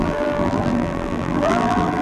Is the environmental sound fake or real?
fake